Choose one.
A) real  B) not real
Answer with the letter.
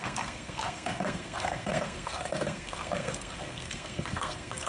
B